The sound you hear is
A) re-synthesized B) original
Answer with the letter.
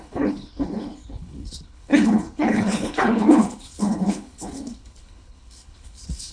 A